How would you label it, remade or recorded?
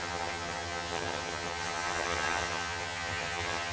remade